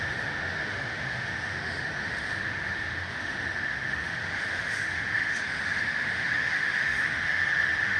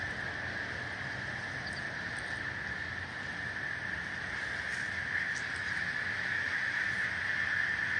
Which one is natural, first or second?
second